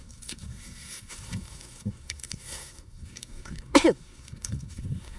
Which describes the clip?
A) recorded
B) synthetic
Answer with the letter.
B